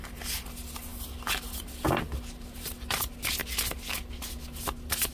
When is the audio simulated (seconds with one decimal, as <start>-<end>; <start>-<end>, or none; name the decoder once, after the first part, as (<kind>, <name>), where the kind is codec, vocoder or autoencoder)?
none